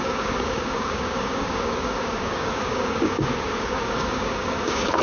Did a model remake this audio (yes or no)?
yes